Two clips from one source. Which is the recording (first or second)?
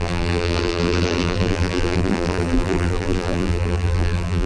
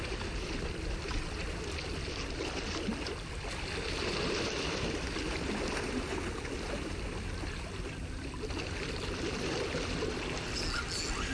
second